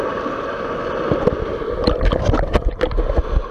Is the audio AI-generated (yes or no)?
no